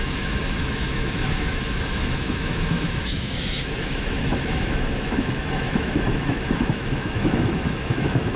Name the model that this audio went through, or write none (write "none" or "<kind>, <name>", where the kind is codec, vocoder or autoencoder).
autoencoder, DAC-VAE